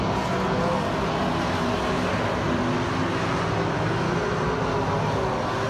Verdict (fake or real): real